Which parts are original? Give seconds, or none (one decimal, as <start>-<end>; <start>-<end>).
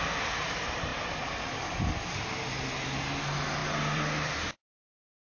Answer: 0.0-5.3